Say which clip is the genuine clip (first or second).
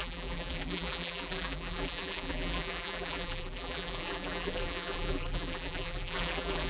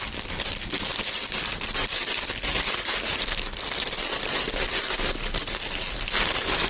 second